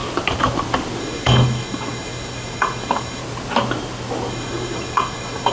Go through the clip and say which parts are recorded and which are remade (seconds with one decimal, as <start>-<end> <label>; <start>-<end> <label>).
0.0-1.0 recorded; 1.0-3.2 remade; 3.2-4.3 recorded; 4.3-5.5 remade